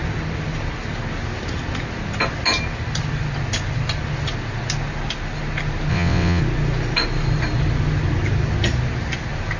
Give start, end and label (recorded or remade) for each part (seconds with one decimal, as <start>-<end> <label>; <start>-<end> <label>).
0.0-5.9 recorded; 5.9-6.4 remade; 6.4-9.6 recorded